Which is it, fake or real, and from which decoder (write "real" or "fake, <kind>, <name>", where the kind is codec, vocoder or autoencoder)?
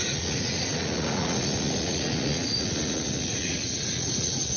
fake, vocoder, Vocos